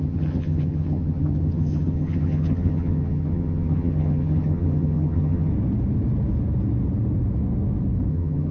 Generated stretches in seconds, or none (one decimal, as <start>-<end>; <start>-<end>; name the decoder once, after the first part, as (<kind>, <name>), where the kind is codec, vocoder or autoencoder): 0.0-5.5 (vocoder, HiFi-GAN); 8.1-8.5